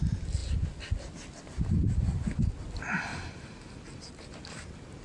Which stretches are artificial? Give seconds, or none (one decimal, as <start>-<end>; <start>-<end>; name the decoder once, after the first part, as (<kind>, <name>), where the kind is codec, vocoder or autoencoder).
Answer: none